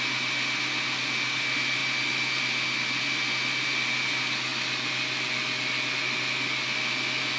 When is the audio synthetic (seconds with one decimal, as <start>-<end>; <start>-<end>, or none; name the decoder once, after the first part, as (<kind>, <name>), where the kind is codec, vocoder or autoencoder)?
none